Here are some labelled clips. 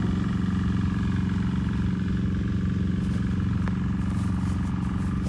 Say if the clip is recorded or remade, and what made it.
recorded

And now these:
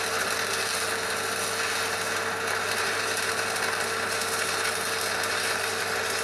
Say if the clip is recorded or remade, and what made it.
recorded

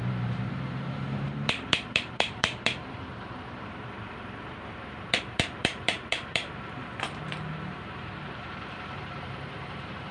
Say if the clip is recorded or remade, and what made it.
remade, vocoder, BigVGAN v2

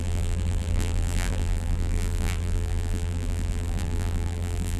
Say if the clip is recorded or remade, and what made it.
remade, vocoder, BigVGAN v2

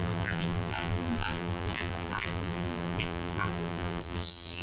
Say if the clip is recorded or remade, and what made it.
remade, vocoder, BigVGAN v2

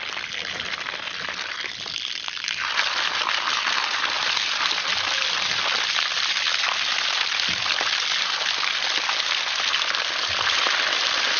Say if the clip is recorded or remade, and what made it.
recorded